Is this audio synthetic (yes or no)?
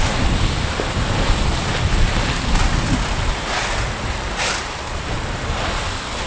no